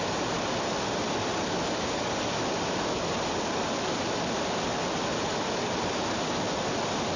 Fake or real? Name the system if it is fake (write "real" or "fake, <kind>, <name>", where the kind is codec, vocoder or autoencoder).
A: real